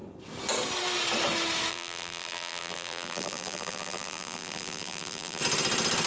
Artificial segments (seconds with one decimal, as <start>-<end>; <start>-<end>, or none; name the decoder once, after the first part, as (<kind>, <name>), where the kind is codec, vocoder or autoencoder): 1.7-5.4 (vocoder, BigVGAN v2)